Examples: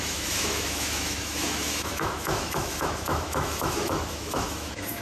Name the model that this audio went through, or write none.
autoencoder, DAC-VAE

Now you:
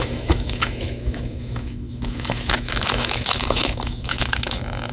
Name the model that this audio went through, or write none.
autoencoder, DAC-VAE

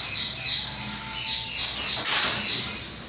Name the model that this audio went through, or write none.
none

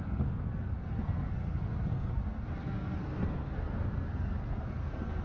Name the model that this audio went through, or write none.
codec, SNAC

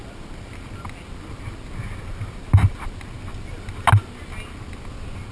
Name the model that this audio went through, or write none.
none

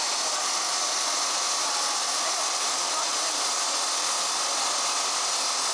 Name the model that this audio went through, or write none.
none